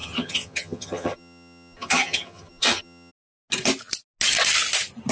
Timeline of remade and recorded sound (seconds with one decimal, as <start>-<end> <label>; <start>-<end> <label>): 0.0-3.1 remade; 3.1-5.1 recorded